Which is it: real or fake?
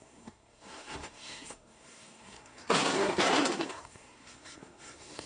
fake